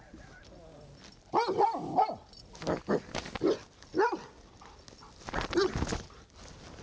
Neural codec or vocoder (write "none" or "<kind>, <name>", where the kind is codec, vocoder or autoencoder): none